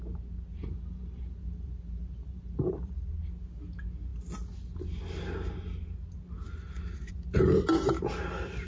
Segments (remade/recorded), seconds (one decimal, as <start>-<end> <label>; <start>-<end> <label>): 0.0-0.5 recorded; 0.5-2.9 remade; 2.9-8.7 recorded